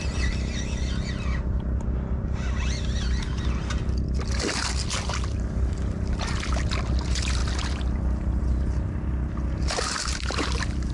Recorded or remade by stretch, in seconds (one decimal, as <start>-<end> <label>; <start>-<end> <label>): 0.0-10.9 recorded

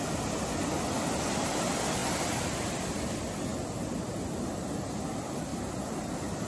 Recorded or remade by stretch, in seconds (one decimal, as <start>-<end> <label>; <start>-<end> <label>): 0.0-0.9 recorded; 0.9-3.5 remade; 3.5-5.1 recorded; 5.1-6.5 remade

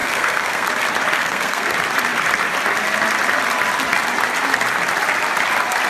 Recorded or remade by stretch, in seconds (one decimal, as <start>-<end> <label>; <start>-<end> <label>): 0.0-0.7 remade; 0.7-1.2 recorded; 1.2-1.7 remade; 1.7-5.9 recorded

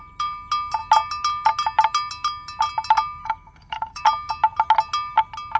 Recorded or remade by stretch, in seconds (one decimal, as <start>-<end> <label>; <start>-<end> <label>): 0.0-3.2 recorded; 3.2-4.0 remade; 4.0-5.6 recorded

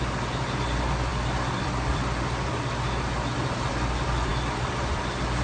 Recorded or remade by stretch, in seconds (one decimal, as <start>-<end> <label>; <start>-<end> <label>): 0.0-5.4 recorded

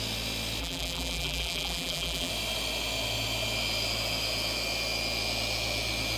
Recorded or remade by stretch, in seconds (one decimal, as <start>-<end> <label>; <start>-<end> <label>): 0.0-0.6 recorded; 0.6-2.3 remade; 2.3-6.2 recorded